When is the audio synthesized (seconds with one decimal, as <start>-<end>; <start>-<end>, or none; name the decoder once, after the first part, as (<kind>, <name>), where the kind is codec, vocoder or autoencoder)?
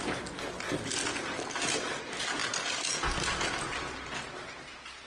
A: none